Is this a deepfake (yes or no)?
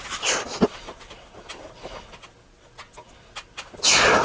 no